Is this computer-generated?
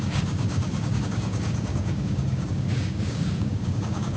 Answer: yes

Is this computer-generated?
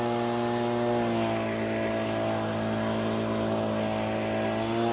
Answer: no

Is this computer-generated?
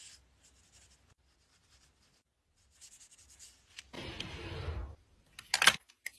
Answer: no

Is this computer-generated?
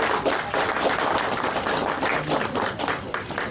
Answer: no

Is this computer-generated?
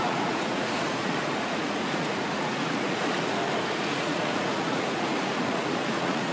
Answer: yes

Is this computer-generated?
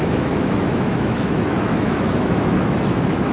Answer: yes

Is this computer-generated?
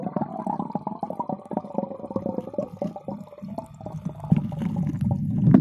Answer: no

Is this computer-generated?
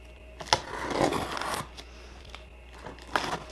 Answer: no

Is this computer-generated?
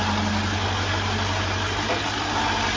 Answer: no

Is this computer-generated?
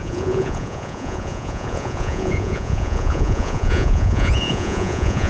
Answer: yes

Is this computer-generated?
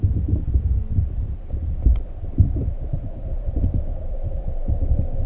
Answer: yes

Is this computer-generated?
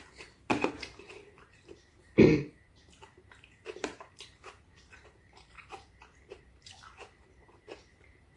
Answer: yes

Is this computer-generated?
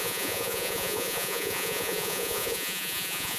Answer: yes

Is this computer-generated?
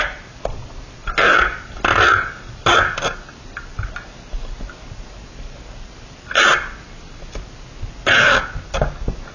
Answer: no